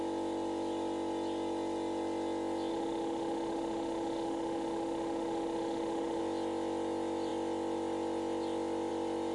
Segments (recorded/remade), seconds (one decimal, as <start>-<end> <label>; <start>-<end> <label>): 0.0-2.7 recorded; 2.7-6.2 remade; 6.2-9.3 recorded